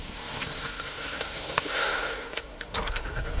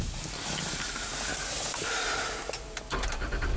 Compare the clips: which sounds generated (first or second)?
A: first